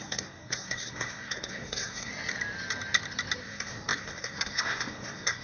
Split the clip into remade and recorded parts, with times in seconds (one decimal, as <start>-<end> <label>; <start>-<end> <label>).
0.0-2.1 remade; 2.1-3.4 recorded; 3.4-5.4 remade